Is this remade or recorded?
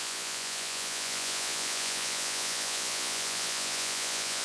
remade